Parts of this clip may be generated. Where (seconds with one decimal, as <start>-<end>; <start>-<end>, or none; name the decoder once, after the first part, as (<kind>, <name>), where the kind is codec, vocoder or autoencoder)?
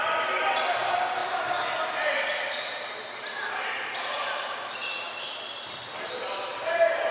none